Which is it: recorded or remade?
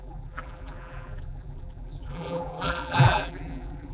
remade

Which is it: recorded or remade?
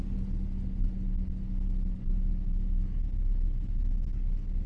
recorded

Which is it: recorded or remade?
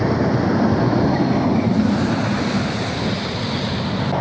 recorded